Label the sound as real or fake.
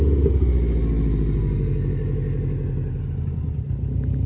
real